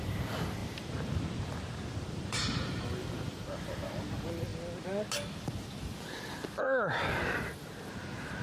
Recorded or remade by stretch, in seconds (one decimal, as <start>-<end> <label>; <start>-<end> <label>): 0.0-0.6 recorded; 0.6-4.1 remade; 4.1-8.4 recorded